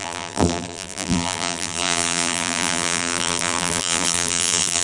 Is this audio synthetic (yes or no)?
yes